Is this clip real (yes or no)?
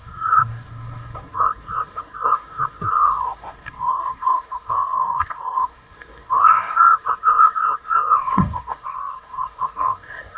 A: no